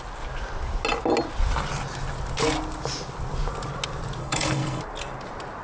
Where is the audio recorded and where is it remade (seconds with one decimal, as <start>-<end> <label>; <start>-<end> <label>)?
0.0-4.2 recorded; 4.2-4.8 remade; 4.8-5.6 recorded